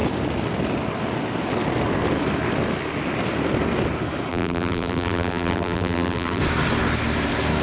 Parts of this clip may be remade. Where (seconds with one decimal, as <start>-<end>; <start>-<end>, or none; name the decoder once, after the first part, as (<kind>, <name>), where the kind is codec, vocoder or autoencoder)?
4.3-6.4 (vocoder, BigVGAN v2)